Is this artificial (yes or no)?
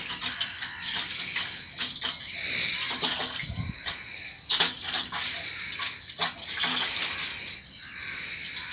no